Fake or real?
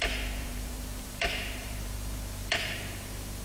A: fake